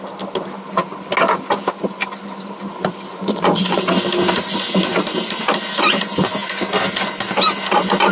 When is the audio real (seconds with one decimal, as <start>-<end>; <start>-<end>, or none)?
0.0-3.1; 3.8-8.1